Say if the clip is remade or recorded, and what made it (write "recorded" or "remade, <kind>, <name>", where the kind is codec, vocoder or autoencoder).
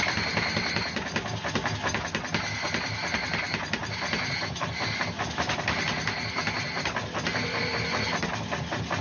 recorded